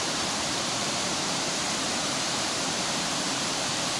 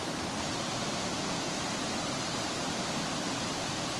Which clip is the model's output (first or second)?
first